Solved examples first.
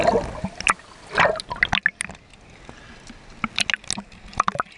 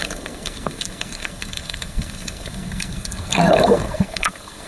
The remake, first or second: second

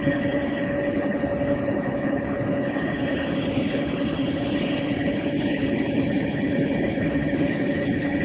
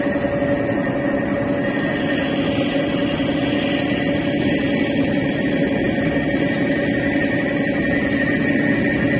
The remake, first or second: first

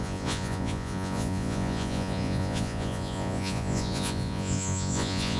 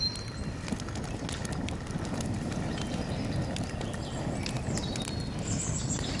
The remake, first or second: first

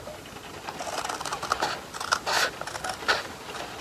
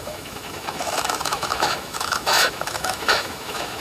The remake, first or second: second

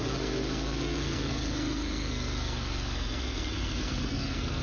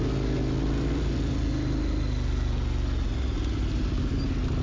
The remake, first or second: first